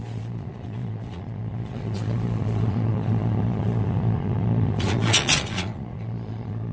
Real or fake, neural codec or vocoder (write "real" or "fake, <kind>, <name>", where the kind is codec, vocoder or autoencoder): fake, vocoder, Vocos